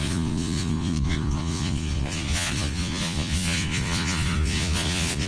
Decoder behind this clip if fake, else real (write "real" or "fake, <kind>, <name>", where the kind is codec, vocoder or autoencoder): fake, vocoder, Vocos